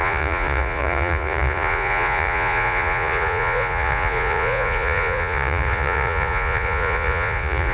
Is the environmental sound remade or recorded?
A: remade